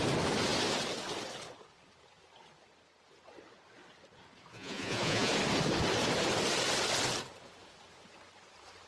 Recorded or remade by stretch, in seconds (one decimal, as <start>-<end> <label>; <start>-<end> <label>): 0.0-4.5 recorded; 4.5-5.3 remade; 5.3-8.9 recorded